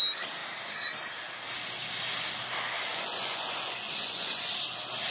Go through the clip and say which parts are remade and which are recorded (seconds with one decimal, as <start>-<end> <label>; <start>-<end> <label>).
0.0-2.9 recorded; 2.9-4.5 remade; 4.5-5.1 recorded